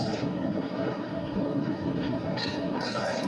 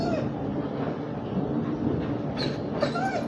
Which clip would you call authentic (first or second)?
second